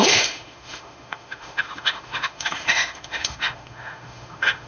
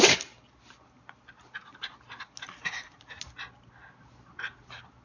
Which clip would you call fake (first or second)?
first